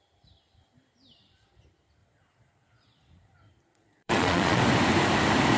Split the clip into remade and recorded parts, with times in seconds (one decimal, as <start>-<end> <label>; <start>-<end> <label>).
0.0-2.0 recorded; 2.0-4.6 remade; 4.6-5.6 recorded

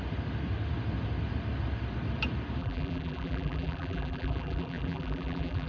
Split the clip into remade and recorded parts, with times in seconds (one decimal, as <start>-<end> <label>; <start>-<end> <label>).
0.0-2.6 recorded; 2.6-5.7 remade

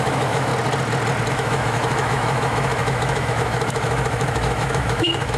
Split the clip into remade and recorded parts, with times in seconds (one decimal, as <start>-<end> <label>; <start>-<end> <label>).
0.0-0.5 remade; 0.5-1.3 recorded; 1.3-5.4 remade

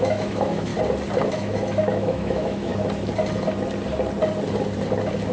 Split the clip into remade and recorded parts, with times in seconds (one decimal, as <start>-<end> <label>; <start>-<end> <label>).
0.0-0.7 remade; 0.7-1.3 recorded; 1.3-2.7 remade; 2.7-5.3 recorded

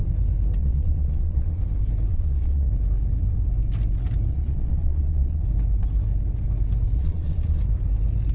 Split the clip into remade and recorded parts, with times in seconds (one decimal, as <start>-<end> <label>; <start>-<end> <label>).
0.0-0.6 recorded; 0.6-1.6 remade; 1.6-2.1 recorded; 2.1-2.7 remade; 2.7-4.3 recorded; 4.3-5.4 remade; 5.4-7.0 recorded; 7.0-7.6 remade; 7.6-8.3 recorded

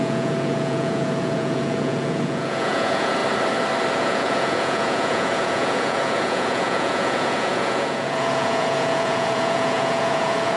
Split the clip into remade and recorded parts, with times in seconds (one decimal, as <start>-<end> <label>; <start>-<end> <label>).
0.0-3.2 remade; 3.2-3.9 recorded; 3.9-10.6 remade

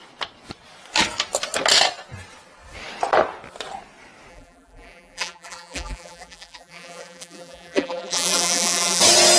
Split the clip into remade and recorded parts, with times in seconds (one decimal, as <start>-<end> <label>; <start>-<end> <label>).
0.0-4.3 recorded; 4.3-9.0 remade; 9.0-9.4 recorded

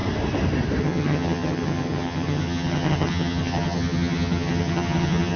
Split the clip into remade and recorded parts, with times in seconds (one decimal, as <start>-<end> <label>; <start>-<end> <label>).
0.0-0.8 recorded; 0.8-5.4 remade